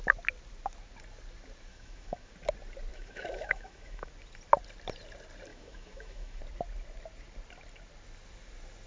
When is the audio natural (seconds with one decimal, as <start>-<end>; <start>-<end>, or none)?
0.0-1.7; 2.3-2.9; 4.1-5.5; 6.4-8.9

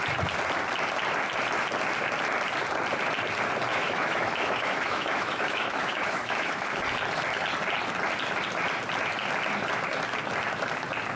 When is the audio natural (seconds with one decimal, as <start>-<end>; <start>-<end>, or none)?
0.0-3.7; 6.8-11.2